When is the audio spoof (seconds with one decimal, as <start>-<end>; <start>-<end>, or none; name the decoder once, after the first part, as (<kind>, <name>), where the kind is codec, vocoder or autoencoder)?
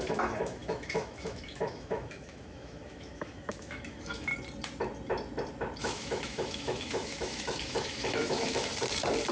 0.0-4.3 (autoencoder, DAC-VAE); 5.8-8.7